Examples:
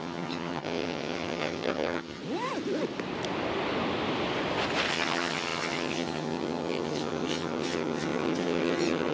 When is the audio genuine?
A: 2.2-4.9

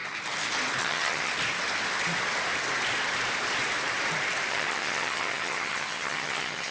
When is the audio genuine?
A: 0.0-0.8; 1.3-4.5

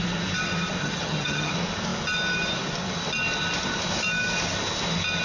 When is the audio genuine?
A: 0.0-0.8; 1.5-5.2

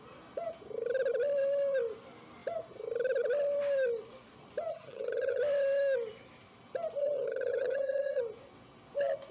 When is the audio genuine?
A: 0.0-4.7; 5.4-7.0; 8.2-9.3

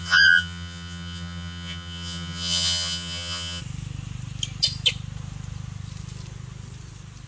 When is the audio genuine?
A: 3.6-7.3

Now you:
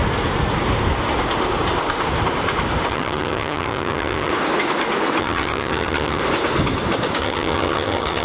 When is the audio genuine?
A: 0.0-2.9; 4.3-5.2; 6.2-7.2

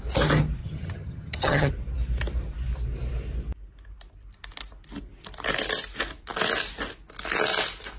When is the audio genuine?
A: 0.0-0.6; 1.7-8.0

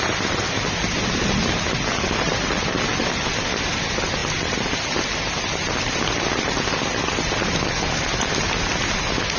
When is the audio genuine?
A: 0.0-9.4